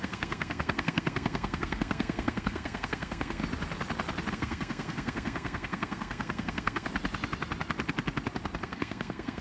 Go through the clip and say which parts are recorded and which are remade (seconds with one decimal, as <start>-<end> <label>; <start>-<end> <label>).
0.0-3.4 remade; 3.4-4.3 recorded; 4.3-6.9 remade; 6.9-8.6 recorded; 8.6-9.4 remade